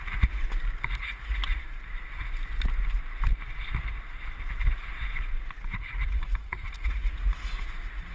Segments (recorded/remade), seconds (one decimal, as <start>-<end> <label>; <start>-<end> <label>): 0.0-0.4 remade; 0.4-1.0 recorded; 1.0-1.6 remade; 1.6-5.7 recorded; 5.7-8.1 remade